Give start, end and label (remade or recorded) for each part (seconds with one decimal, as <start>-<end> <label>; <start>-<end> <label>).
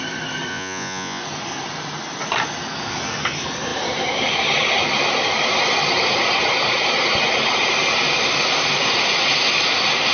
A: 0.0-0.5 recorded; 0.5-1.2 remade; 1.2-10.1 recorded